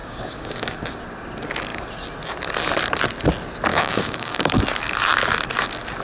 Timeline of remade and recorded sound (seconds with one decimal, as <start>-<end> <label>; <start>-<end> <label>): 0.0-0.8 remade; 0.8-3.7 recorded; 3.7-4.6 remade; 4.6-6.0 recorded